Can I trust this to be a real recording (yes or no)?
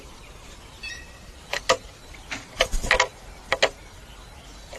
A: yes